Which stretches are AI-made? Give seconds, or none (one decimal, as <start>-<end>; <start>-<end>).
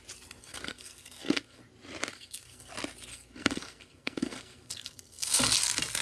0.4-1.6; 2.1-2.7; 3.1-5.4